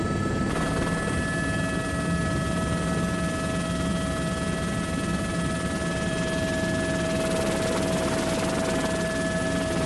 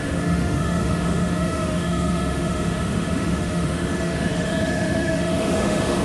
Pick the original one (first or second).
first